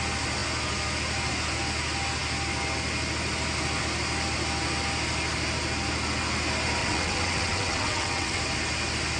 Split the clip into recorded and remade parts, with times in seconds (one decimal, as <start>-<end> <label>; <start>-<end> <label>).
0.0-6.8 recorded; 6.8-8.4 remade; 8.4-9.2 recorded